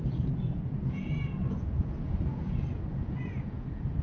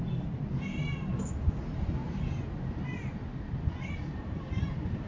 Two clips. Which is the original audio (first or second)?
second